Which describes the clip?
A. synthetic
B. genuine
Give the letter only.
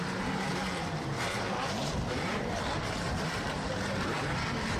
A